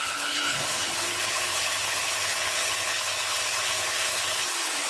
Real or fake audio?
fake